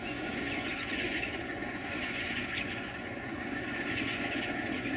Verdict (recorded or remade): remade